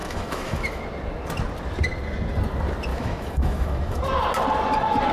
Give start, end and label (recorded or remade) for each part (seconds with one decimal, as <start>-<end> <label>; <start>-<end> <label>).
0.0-0.8 remade; 0.8-2.9 recorded; 2.9-4.0 remade; 4.0-5.1 recorded